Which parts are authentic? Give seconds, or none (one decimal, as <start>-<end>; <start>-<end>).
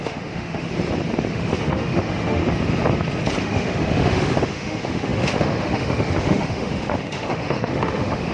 0.7-1.3; 2.4-3.4